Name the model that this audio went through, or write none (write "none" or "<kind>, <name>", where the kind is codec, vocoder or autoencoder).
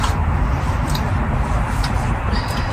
vocoder, BigVGAN v2